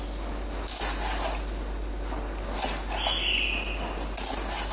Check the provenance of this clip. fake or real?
real